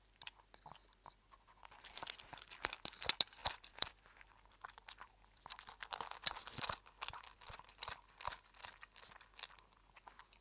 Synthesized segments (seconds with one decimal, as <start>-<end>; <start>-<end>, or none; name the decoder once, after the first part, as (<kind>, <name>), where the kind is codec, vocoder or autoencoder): 3.4-7.9 (vocoder, BigVGAN v2)